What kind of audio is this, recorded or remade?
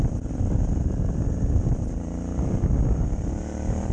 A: recorded